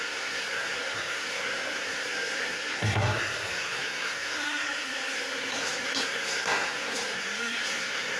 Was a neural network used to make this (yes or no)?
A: yes